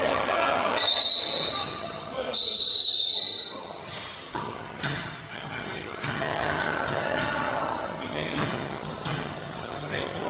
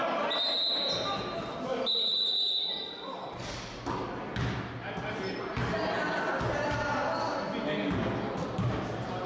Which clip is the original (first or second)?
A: second